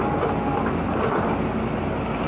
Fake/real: real